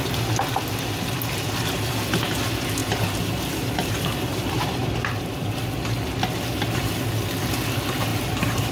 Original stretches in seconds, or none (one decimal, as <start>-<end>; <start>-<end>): 0.0-2.8; 5.6-8.1